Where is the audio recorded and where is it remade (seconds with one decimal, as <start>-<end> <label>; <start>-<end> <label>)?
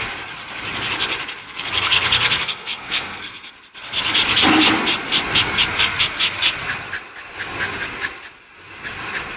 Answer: 0.0-1.4 recorded; 1.4-3.5 remade; 3.5-9.4 recorded